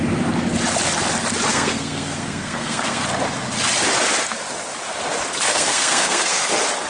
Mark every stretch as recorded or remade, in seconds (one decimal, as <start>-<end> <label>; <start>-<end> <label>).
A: 0.0-1.5 recorded; 1.5-3.0 remade; 3.0-5.5 recorded; 5.5-6.5 remade; 6.5-6.9 recorded